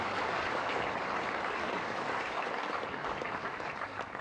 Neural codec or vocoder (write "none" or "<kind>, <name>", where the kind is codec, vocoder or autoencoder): codec, DAC